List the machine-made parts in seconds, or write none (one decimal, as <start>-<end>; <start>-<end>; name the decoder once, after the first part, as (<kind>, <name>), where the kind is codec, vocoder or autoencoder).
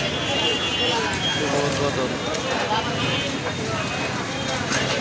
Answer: none